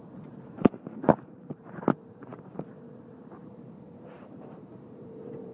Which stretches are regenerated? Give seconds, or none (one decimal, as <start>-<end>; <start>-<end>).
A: 0.0-5.5